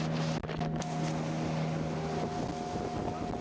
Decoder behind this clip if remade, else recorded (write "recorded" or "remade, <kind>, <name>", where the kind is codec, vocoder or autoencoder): recorded